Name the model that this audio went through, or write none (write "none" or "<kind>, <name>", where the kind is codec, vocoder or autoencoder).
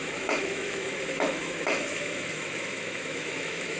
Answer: autoencoder, DAC-VAE